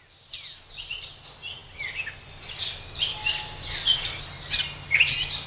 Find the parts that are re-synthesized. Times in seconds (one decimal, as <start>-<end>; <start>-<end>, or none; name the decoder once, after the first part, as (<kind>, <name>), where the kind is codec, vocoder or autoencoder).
none